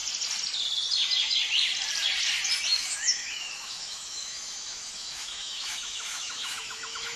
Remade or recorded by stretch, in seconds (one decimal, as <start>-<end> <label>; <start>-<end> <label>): 0.0-2.7 recorded; 2.7-7.2 remade